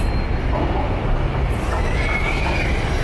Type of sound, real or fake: real